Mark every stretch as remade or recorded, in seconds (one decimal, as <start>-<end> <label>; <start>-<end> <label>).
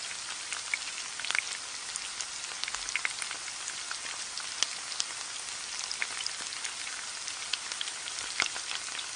0.0-9.2 recorded